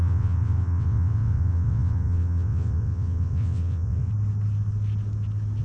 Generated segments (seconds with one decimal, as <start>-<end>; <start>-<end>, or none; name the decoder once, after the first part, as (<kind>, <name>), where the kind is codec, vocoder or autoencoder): 0.0-4.1 (vocoder, WaveNeXt)